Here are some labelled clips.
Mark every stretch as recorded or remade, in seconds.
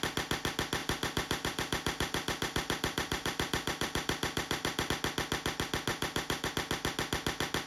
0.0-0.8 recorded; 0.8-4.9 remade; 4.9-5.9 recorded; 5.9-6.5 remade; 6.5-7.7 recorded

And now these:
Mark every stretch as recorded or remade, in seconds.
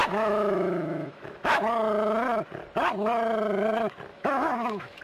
0.0-1.6 remade; 1.6-4.1 recorded; 4.1-5.0 remade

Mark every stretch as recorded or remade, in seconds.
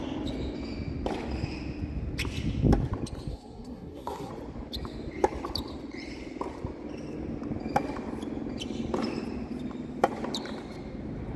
0.0-3.3 recorded; 3.3-4.3 remade; 4.3-11.4 recorded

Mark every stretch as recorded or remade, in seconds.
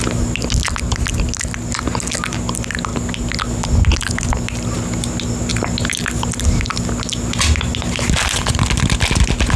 0.0-9.6 recorded